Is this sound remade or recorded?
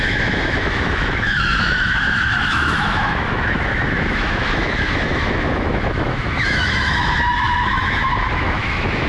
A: remade